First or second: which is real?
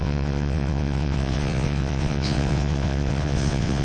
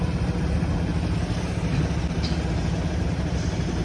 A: second